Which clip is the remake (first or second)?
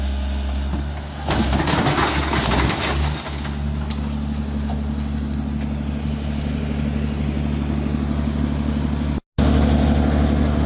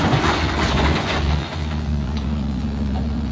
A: second